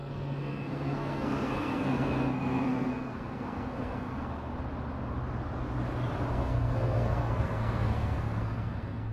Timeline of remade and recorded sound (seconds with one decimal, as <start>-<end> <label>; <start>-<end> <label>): 0.0-4.5 remade; 4.5-6.3 recorded; 6.3-9.1 remade